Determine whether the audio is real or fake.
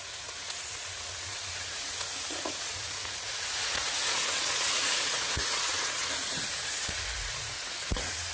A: fake